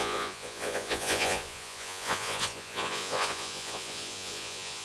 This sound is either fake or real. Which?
fake